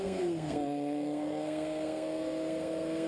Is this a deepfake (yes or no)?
yes